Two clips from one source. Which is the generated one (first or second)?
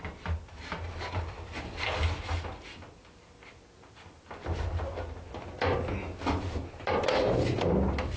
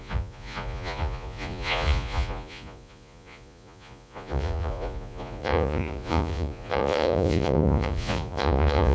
second